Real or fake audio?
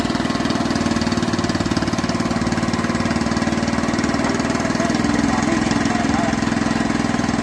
real